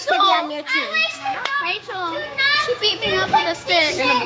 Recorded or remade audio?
remade